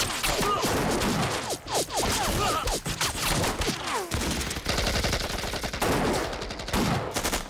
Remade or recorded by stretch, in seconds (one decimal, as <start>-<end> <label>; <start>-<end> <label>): 0.0-7.5 recorded